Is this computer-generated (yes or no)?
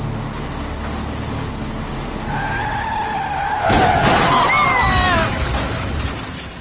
no